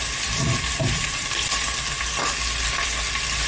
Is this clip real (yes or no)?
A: yes